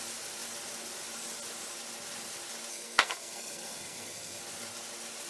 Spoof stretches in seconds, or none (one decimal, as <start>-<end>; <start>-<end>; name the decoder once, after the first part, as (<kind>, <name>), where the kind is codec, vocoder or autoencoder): 2.7-4.4 (codec, SNAC)

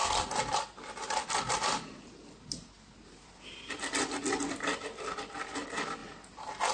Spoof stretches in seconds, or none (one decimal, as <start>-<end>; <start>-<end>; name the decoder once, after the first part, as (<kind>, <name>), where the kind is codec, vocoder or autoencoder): none

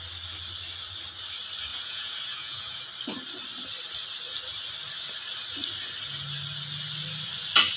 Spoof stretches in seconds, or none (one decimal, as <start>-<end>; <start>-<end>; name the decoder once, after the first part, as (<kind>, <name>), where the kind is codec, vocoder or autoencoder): 1.7-2.8 (vocoder, Vocos)